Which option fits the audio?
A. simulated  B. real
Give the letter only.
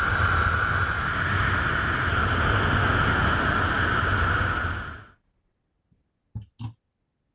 B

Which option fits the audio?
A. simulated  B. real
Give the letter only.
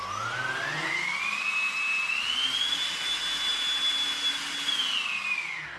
B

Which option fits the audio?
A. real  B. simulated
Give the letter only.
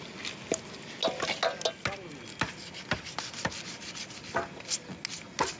A